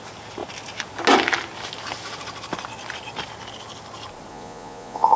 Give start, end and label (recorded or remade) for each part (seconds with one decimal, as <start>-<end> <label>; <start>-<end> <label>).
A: 0.0-4.3 recorded; 4.3-5.2 remade